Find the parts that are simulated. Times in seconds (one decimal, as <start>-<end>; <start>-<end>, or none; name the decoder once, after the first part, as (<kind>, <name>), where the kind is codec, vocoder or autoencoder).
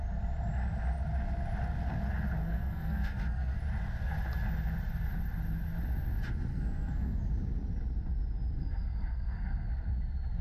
2.4-3.6 (codec, SNAC); 6.5-7.3; 8.6-9.9